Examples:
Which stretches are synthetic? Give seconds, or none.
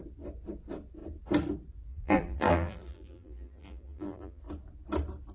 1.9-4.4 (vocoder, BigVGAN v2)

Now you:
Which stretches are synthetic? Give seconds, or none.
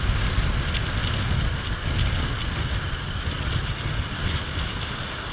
none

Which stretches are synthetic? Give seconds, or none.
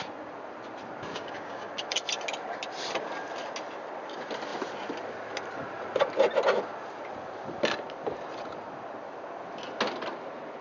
1.1-1.7 (codec, DAC)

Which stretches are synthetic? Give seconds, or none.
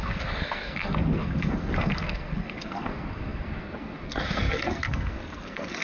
0.0-5.8 (codec, SNAC)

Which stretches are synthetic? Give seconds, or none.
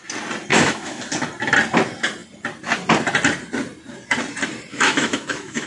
0.5-1.0 (autoencoder, DAC-VAE); 4.7-5.7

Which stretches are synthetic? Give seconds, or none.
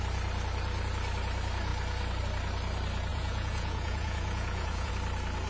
3.1-4.9 (vocoder, Vocos)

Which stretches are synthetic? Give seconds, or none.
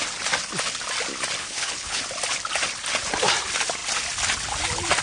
1.4-2.0 (codec, HILCodec)